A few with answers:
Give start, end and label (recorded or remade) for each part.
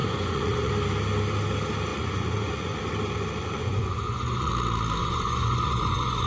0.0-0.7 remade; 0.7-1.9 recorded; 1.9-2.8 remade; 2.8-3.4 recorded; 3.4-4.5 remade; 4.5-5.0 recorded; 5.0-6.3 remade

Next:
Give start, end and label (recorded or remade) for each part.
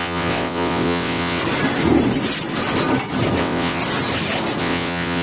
0.0-1.4 remade; 1.4-3.4 recorded; 3.4-3.8 remade; 3.8-4.6 recorded; 4.6-5.2 remade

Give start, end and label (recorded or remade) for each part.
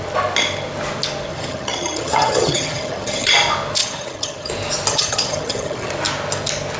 0.0-1.3 recorded; 1.3-3.3 remade; 3.3-3.8 recorded; 3.8-4.5 remade; 4.5-4.9 recorded; 4.9-5.9 remade; 5.9-6.8 recorded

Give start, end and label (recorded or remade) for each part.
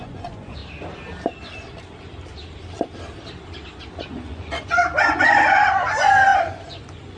0.0-0.6 remade; 0.6-4.0 recorded; 4.0-7.2 remade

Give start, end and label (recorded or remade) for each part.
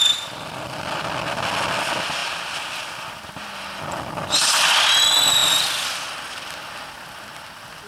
0.0-7.9 recorded